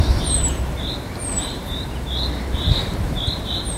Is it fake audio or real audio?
fake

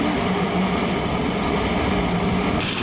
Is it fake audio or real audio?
fake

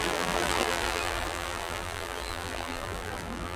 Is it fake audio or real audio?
fake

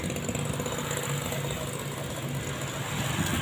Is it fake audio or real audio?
real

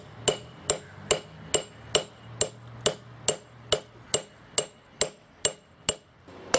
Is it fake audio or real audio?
real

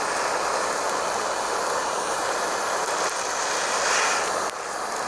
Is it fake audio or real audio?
real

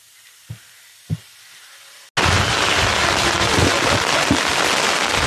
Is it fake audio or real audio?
real